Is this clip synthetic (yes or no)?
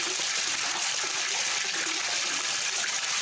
no